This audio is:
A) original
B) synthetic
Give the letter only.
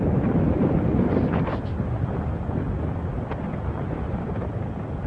A